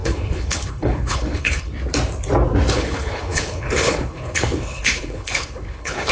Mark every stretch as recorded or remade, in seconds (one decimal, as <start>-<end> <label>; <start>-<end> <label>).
0.0-1.7 remade; 1.7-2.7 recorded; 2.7-6.1 remade